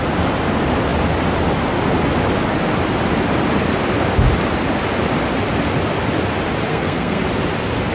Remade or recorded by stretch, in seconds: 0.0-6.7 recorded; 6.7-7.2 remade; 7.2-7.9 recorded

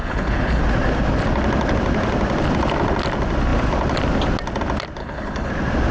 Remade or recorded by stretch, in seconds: 0.0-0.6 remade; 0.6-5.0 recorded; 5.0-5.5 remade; 5.5-5.9 recorded

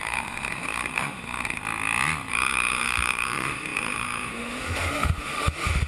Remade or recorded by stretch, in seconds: 0.0-1.6 remade; 1.6-2.3 recorded; 2.3-5.9 remade

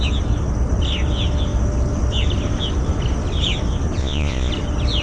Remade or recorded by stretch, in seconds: 0.0-4.0 recorded; 4.0-4.5 remade; 4.5-5.0 recorded